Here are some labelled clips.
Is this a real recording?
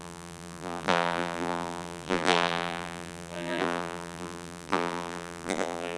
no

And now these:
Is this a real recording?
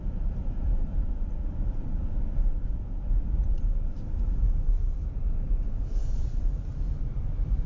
no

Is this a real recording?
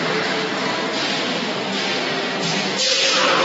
yes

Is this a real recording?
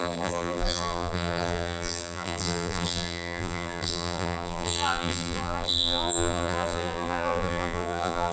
no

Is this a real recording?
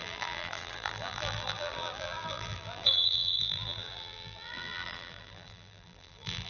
no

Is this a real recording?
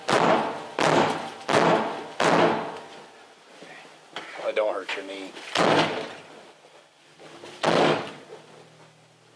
yes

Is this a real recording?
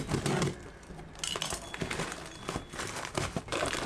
yes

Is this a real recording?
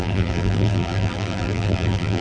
no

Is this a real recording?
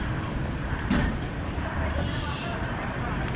no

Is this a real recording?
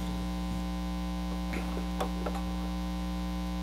yes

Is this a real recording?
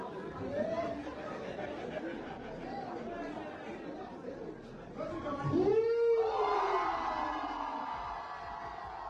yes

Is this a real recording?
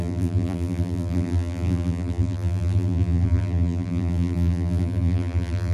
no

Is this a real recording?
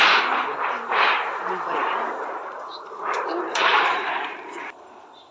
no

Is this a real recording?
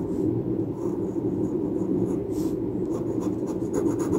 no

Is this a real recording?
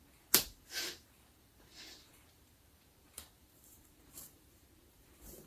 no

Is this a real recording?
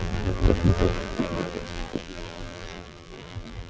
no